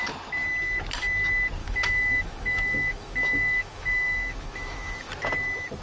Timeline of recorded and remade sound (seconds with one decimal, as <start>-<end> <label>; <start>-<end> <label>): 0.0-1.6 recorded; 1.6-5.1 remade; 5.1-5.8 recorded

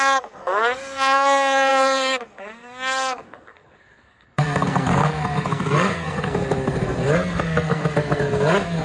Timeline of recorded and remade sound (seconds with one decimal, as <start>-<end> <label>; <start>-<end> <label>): 0.0-8.8 remade

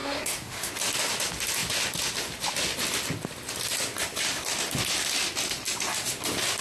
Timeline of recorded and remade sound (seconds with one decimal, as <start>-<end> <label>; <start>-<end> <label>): 0.0-0.7 remade; 0.7-6.6 recorded

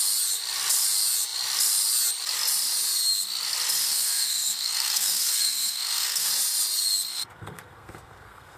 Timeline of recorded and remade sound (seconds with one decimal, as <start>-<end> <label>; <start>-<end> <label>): 0.0-3.8 recorded; 3.8-6.3 remade; 6.3-7.1 recorded; 7.1-8.6 remade